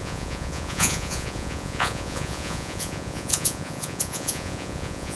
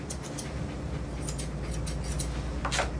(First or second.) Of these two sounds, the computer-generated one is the first